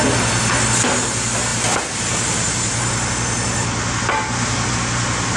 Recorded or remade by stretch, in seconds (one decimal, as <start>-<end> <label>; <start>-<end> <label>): 0.0-5.4 recorded

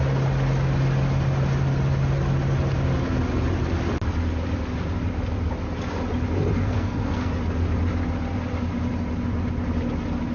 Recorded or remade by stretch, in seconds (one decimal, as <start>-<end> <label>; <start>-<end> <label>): 0.0-6.6 recorded; 6.6-7.3 remade; 7.3-10.3 recorded

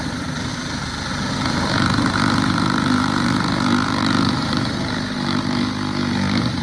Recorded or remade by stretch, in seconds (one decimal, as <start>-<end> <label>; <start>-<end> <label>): 0.0-0.5 remade; 0.5-1.3 recorded; 1.3-6.6 remade

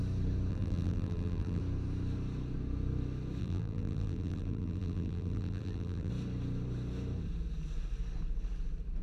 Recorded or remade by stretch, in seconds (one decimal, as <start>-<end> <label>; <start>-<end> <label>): 0.0-0.5 recorded; 0.5-1.6 remade; 1.6-3.4 recorded; 3.4-6.1 remade; 6.1-9.0 recorded

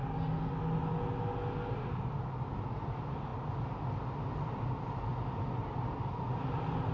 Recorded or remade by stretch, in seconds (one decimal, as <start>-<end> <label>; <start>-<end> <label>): 0.0-6.9 recorded